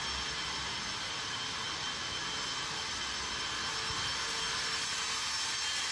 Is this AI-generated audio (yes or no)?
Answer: no